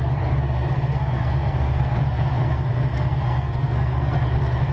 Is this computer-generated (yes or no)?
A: yes